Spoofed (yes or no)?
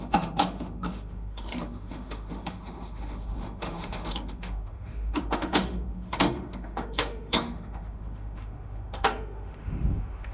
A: yes